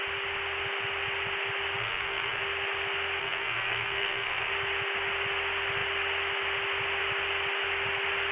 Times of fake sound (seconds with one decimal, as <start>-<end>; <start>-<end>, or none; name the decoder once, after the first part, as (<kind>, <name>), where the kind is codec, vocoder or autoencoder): 1.8-2.4 (codec, SNAC); 3.2-4.5